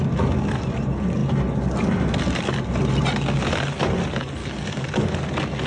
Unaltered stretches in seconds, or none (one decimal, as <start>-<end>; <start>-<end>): 0.0-4.4; 5.1-5.7